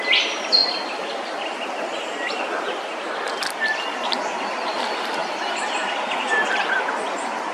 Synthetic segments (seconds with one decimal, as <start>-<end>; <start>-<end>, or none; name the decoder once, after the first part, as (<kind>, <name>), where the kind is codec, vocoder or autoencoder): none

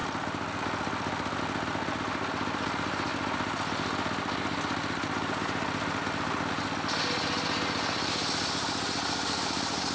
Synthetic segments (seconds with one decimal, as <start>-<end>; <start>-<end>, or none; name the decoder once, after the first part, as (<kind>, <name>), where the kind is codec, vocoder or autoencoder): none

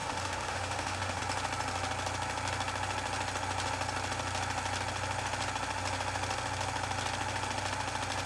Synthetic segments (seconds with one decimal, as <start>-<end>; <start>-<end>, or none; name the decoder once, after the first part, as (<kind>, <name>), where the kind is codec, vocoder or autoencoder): 0.0-1.2 (autoencoder, DAC-VAE)

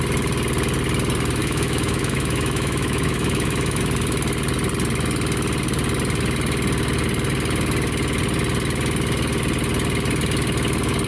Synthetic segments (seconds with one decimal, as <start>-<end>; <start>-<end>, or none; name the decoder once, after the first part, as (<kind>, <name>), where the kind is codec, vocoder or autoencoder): 1.4-3.8 (autoencoder, DAC-VAE)

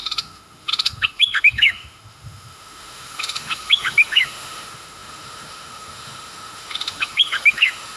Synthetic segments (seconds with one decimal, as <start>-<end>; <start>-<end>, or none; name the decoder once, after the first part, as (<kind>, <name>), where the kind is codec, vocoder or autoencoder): 0.0-8.0 (autoencoder, DAC-VAE)

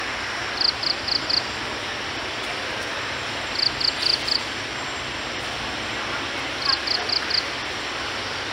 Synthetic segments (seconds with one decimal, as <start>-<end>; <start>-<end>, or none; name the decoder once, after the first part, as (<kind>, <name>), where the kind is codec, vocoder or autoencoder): none

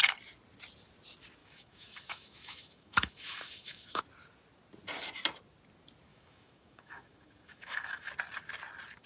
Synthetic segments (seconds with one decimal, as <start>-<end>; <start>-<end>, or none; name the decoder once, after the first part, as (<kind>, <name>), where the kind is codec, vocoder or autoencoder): 1.4-4.0 (autoencoder, DAC-VAE); 6.1-8.1